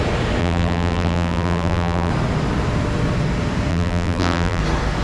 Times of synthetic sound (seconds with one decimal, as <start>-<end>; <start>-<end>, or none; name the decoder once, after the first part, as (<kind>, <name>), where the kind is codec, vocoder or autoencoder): 0.4-2.1 (vocoder, BigVGAN v2); 3.7-4.6